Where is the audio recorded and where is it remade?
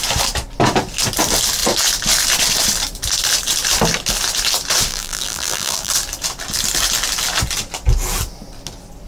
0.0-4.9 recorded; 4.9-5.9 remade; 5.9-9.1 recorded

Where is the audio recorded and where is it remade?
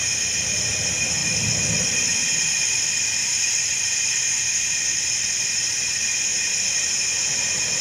0.0-1.2 recorded; 1.2-2.2 remade; 2.2-3.2 recorded; 3.2-3.9 remade; 3.9-7.8 recorded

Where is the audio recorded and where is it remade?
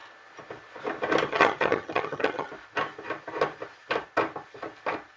0.0-1.3 recorded; 1.3-2.5 remade; 2.5-5.2 recorded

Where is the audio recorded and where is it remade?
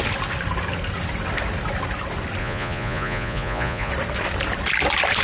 0.0-2.4 recorded; 2.4-3.9 remade; 3.9-5.2 recorded